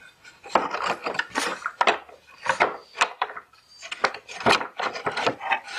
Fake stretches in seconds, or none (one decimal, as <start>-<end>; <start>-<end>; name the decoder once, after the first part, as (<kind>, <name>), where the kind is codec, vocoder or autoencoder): 2.8-5.3 (vocoder, BigVGAN v2)